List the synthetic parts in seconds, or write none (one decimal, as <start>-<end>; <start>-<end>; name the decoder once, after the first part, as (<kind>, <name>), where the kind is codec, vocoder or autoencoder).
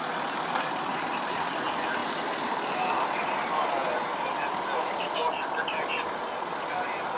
2.0-3.5 (vocoder, BigVGAN v2)